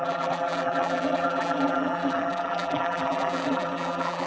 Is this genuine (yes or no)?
no